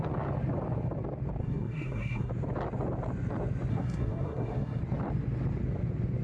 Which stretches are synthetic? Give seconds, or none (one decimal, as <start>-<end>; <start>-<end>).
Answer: 1.4-2.3; 3.7-4.8